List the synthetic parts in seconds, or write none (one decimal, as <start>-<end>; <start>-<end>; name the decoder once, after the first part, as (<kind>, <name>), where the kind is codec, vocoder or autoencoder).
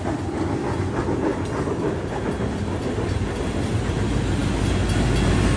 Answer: none